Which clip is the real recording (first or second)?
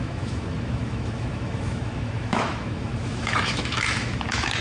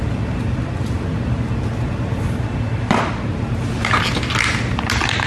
second